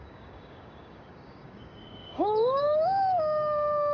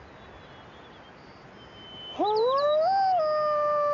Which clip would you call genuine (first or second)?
second